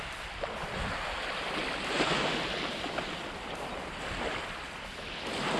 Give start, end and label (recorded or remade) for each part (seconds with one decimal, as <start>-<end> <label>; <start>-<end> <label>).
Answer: 0.0-5.6 recorded